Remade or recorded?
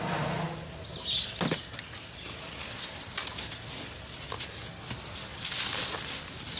recorded